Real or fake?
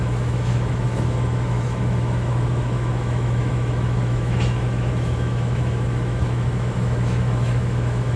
fake